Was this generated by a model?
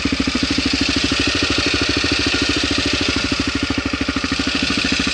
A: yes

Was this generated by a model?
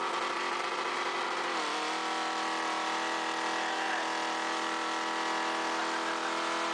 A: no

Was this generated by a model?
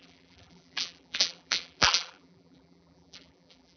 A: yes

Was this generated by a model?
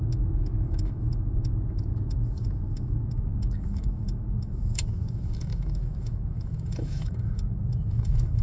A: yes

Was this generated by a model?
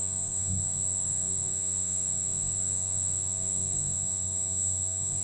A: yes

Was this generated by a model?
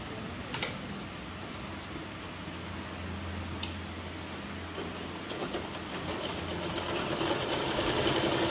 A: no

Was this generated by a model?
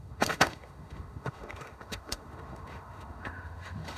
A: yes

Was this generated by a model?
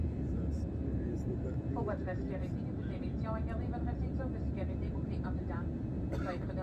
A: yes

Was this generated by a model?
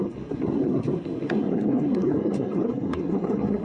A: yes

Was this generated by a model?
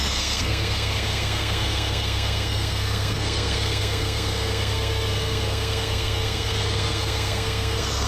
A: yes